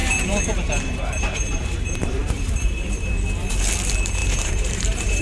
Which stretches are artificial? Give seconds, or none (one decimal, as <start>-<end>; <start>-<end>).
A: 0.0-3.1; 4.2-5.2